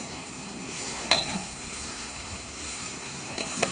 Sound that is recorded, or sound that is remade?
remade